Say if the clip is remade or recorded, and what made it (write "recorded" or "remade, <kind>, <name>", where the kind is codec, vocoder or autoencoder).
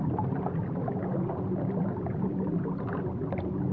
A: recorded